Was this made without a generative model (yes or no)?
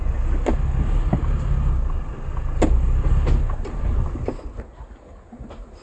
yes